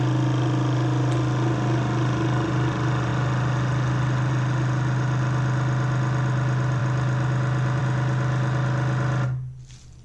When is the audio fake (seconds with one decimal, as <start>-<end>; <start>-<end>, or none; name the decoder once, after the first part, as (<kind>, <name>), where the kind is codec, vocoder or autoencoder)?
none